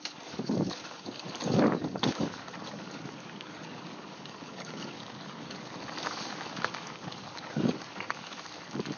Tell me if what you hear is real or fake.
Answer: fake